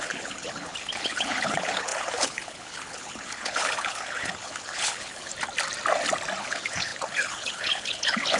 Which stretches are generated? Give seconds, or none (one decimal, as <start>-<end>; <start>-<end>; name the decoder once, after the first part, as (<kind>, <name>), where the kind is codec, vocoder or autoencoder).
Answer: 0.0-5.3 (codec, HILCodec); 6.4-8.4